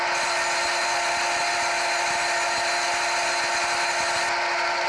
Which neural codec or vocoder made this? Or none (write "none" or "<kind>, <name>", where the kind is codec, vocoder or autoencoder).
none